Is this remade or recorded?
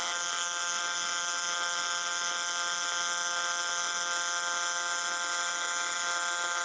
remade